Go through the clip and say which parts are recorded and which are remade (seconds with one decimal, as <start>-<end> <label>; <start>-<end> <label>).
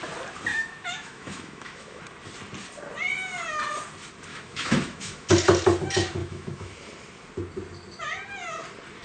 0.0-0.5 recorded; 0.5-2.0 remade; 2.0-4.3 recorded; 4.3-5.3 remade; 5.3-6.2 recorded; 6.2-6.7 remade; 6.7-9.0 recorded